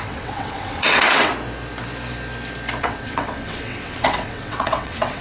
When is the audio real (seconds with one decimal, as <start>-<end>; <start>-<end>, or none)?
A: 1.3-2.8